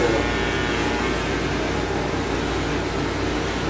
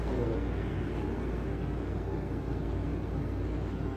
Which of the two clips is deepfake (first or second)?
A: second